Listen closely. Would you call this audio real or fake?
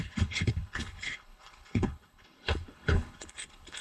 fake